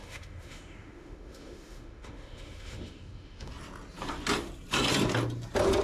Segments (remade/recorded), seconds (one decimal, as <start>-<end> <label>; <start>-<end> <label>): 0.0-3.5 remade; 3.5-5.8 recorded